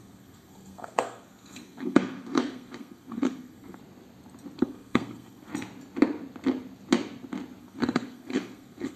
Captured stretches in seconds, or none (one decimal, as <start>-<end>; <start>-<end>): 3.8-4.6; 5.5-7.6